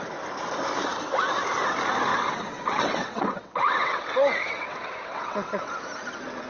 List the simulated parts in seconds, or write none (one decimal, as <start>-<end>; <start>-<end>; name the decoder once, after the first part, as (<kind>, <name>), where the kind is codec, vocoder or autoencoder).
2.1-5.7 (vocoder, WaveNeXt)